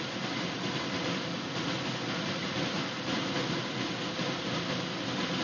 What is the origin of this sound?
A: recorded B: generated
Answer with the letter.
A